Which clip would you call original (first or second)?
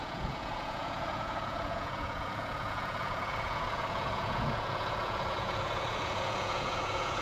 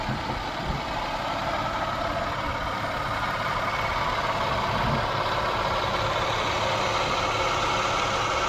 second